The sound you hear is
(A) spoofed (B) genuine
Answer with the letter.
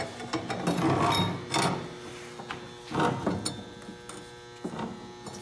B